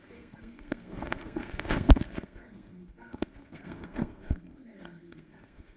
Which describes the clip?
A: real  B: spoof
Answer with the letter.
B